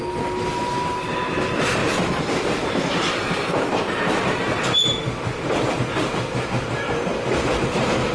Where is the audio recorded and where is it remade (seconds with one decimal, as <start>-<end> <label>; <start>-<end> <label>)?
0.0-1.8 recorded; 1.8-5.7 remade; 5.7-7.1 recorded; 7.1-8.1 remade